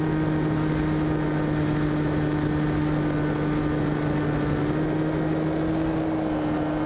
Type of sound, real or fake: real